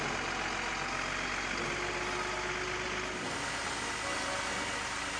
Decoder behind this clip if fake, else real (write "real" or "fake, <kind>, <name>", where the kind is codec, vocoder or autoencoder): real